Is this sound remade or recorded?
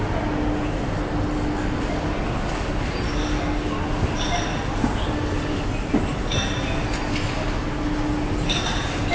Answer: recorded